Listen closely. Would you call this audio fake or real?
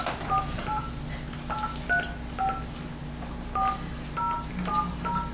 real